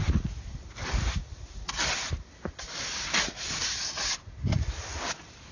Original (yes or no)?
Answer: yes